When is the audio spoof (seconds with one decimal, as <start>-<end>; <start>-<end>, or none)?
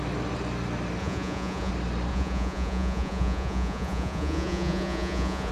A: 1.0-1.7; 2.1-5.5